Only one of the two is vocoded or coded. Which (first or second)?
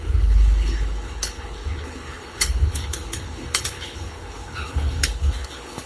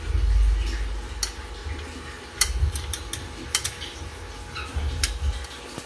first